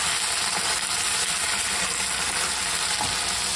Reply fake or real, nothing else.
real